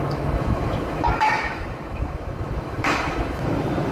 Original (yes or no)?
no